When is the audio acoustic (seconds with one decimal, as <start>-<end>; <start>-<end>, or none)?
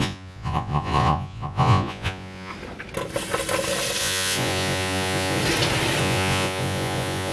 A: 2.5-4.0; 5.4-6.0